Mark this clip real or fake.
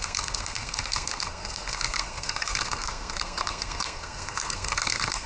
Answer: fake